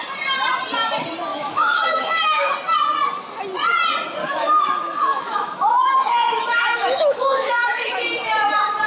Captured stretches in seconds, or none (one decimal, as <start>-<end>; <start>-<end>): 0.0-1.3; 2.5-4.2; 7.9-8.9